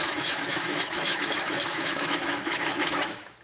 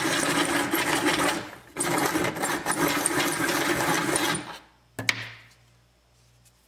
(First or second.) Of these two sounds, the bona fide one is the second